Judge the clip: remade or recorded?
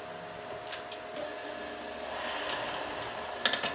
recorded